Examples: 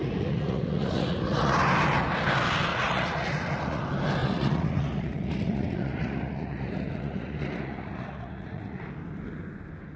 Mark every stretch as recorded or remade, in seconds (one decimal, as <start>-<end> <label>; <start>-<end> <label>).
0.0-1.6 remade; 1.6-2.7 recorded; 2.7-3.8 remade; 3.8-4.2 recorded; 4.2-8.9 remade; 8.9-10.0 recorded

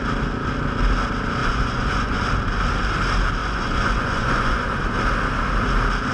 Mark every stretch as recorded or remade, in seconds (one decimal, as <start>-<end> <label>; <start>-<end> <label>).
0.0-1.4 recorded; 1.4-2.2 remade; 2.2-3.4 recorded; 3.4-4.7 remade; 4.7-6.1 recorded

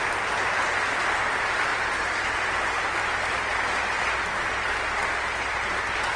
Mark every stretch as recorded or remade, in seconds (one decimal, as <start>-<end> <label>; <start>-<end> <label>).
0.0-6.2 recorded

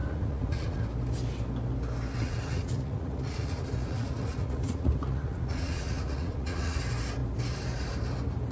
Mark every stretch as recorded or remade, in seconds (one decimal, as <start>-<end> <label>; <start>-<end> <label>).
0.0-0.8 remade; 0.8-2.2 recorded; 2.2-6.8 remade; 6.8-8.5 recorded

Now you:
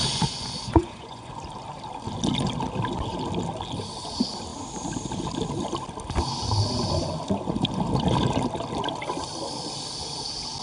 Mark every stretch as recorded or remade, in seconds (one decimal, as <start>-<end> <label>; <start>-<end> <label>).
0.0-1.3 remade; 1.3-10.6 recorded

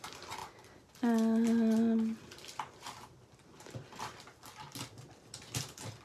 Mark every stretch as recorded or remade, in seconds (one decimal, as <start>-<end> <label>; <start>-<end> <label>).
0.0-6.0 recorded